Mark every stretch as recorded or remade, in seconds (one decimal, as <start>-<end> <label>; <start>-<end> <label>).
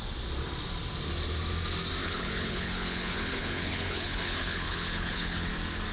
0.0-2.0 recorded; 2.0-5.5 remade; 5.5-5.9 recorded